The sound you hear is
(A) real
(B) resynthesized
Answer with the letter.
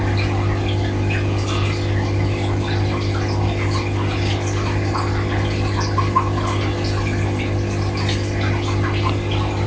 A